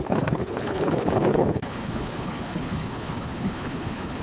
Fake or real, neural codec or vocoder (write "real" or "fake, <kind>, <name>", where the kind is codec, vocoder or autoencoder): fake, codec, HILCodec